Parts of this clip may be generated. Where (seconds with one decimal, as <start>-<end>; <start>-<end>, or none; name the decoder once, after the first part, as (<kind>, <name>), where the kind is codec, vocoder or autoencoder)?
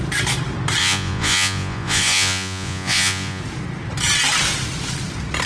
0.8-3.4 (vocoder, Vocos)